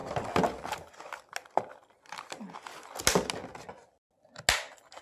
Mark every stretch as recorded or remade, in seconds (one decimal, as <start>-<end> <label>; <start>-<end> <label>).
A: 0.0-5.0 recorded